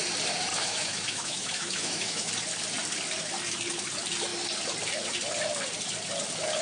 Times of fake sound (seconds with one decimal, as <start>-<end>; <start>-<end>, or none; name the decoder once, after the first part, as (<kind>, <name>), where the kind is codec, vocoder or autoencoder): 0.5-2.3 (autoencoder, DAC-VAE)